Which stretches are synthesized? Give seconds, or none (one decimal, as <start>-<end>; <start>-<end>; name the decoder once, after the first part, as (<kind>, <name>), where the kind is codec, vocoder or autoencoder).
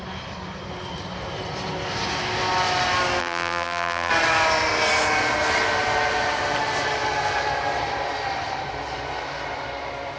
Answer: 3.2-4.1 (vocoder, BigVGAN v2)